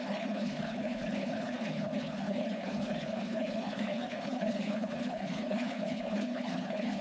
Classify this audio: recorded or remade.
remade